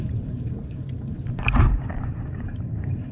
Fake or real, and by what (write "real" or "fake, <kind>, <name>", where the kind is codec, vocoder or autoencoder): fake, vocoder, BigVGAN v2